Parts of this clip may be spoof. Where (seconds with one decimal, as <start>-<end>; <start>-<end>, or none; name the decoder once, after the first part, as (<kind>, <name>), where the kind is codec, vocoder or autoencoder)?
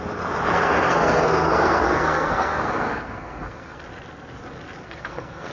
0.5-3.8 (codec, SNAC); 4.8-5.5